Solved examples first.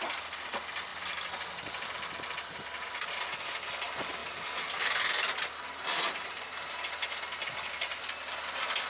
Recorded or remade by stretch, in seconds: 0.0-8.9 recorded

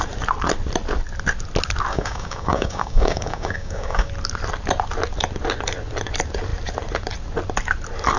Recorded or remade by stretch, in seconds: 0.0-1.9 recorded; 1.9-4.1 remade; 4.1-8.2 recorded

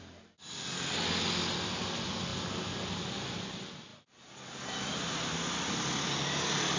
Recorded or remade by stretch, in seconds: 0.0-6.8 recorded

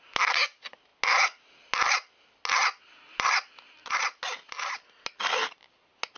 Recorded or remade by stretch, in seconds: 0.0-6.2 recorded

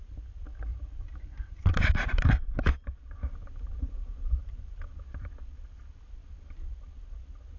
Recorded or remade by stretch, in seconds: 0.0-0.7 recorded; 0.7-5.3 remade; 5.3-7.6 recorded

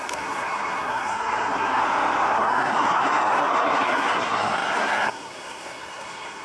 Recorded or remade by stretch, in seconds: 0.0-1.8 remade; 1.8-2.3 recorded; 2.3-6.4 remade

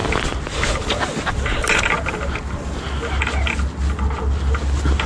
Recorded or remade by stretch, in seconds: 0.0-5.1 recorded

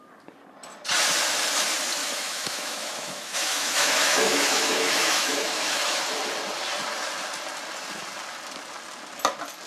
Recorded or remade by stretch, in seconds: 0.0-2.0 recorded; 2.0-6.0 remade; 6.0-9.7 recorded